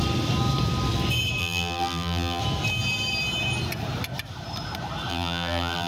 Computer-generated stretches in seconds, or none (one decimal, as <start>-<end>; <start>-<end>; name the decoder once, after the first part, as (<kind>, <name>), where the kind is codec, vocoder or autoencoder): 1.4-2.4 (vocoder, BigVGAN v2); 5.1-5.9